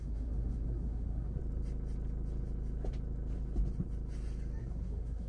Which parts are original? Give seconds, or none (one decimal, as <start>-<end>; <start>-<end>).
1.4-4.6